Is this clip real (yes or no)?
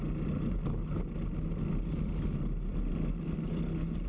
yes